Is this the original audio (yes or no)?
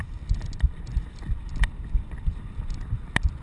no